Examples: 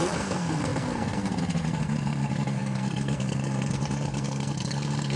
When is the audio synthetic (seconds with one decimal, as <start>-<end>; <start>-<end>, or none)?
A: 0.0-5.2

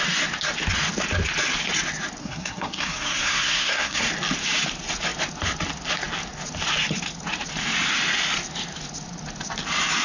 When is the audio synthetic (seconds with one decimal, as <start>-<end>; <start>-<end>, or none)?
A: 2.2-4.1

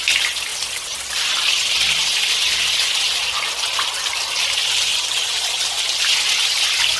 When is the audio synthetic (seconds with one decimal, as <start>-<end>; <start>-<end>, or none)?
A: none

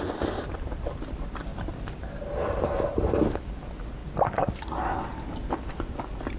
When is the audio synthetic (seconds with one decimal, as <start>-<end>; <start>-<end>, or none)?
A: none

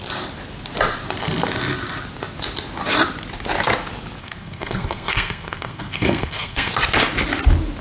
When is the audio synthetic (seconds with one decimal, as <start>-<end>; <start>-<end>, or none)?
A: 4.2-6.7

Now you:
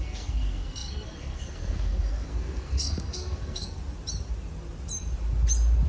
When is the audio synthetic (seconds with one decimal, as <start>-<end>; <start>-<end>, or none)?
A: 0.0-3.8